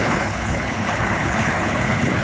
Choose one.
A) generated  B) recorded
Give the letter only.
A